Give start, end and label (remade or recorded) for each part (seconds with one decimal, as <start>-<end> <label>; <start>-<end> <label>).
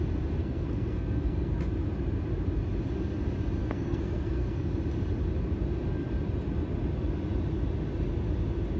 0.0-0.4 recorded; 0.4-1.5 remade; 1.5-3.6 recorded; 3.6-4.7 remade; 4.7-8.8 recorded